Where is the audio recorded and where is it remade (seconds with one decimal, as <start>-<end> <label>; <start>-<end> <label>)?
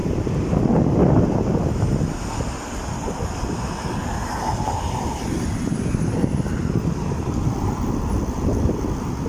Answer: 0.0-9.3 recorded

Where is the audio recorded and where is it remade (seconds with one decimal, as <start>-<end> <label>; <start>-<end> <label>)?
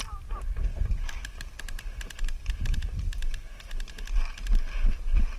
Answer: 0.0-5.4 recorded